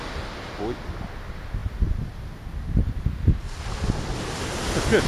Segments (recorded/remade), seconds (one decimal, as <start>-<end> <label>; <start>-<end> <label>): 0.0-5.1 recorded